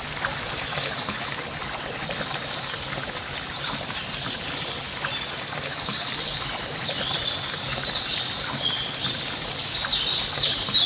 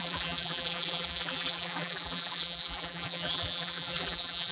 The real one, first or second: first